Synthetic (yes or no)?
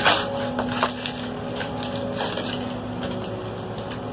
no